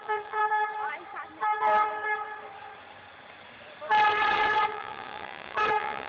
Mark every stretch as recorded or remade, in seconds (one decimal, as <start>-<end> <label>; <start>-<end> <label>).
0.0-0.4 remade; 0.4-4.1 recorded; 4.1-6.1 remade